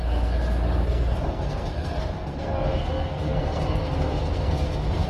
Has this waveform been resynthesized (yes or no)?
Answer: yes